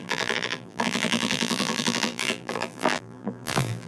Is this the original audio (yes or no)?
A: no